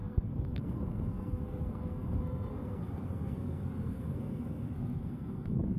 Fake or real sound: fake